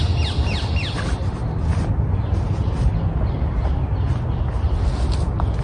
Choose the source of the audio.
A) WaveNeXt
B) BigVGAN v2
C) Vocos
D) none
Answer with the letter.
D